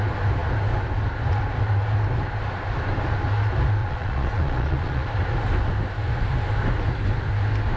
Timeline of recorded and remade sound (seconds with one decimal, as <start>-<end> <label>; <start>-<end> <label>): 0.0-3.8 recorded; 3.8-5.1 remade; 5.1-7.8 recorded